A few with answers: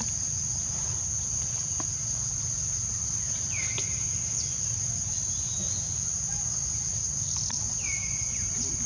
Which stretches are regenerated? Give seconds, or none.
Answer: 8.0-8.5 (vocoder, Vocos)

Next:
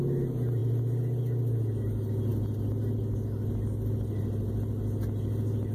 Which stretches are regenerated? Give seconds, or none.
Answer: none

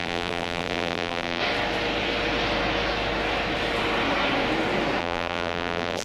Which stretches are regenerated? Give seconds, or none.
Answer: 0.0-1.4 (vocoder, BigVGAN v2); 5.0-6.0

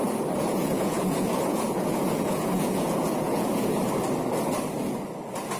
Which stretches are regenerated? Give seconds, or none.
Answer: 0.4-3.8 (vocoder, Vocos)

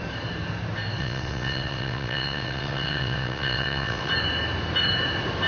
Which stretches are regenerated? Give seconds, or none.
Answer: 1.0-4.1 (vocoder, WaveNeXt)

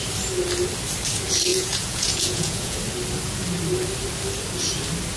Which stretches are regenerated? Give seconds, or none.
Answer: 1.5-2.8 (vocoder, Vocos)

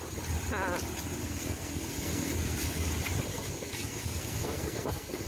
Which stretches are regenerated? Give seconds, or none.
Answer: 1.2-2.9 (codec, SNAC); 3.3-5.3

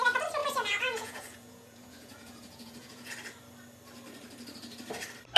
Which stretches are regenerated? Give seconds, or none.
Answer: 0.4-3.1 (vocoder, Vocos)